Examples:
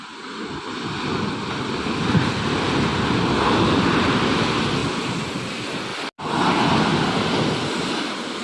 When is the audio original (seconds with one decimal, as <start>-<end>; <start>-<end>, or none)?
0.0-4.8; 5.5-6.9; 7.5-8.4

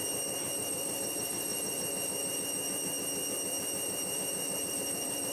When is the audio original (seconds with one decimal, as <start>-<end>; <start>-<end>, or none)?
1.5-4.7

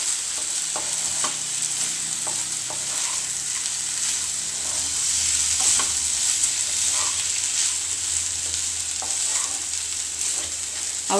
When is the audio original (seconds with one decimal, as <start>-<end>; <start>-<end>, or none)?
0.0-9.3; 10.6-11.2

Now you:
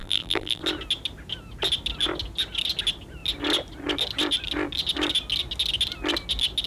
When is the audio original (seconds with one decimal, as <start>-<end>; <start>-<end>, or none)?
0.6-6.7

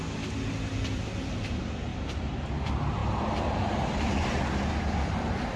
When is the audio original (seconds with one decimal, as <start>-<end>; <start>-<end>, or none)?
0.0-1.9; 2.5-5.6

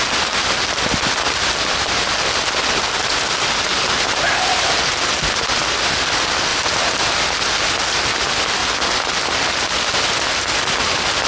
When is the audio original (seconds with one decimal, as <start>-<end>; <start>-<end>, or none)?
0.0-3.7; 4.7-6.5; 7.1-11.3